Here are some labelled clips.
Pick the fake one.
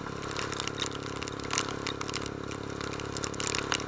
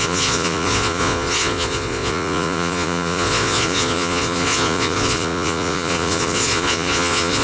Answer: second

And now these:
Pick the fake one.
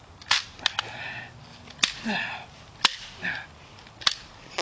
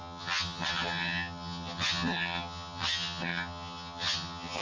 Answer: second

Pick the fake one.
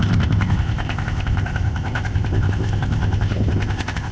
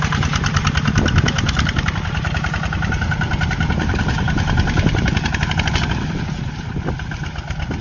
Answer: first